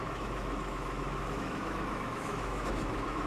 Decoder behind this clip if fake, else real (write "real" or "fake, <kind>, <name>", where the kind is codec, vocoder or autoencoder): fake, autoencoder, DAC-VAE